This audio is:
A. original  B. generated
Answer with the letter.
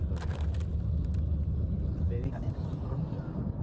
A